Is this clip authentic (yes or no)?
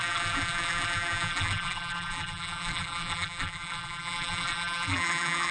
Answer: no